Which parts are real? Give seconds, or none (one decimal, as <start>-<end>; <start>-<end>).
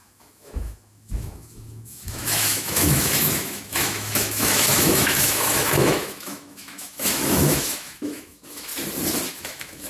8.7-9.3